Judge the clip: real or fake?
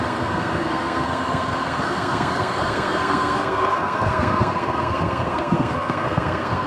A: fake